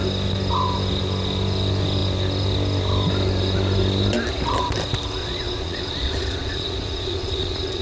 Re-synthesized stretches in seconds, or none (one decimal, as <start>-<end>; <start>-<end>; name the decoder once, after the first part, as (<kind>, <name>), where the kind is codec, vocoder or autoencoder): 5.2-7.8 (vocoder, Vocos)